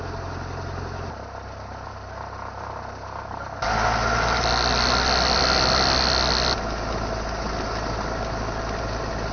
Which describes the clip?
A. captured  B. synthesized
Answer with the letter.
A